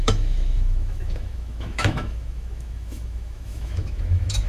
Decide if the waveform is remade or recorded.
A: remade